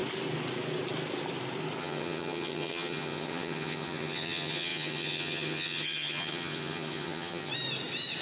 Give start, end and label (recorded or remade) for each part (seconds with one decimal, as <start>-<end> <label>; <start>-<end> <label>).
0.0-1.8 recorded; 1.8-7.5 remade; 7.5-8.2 recorded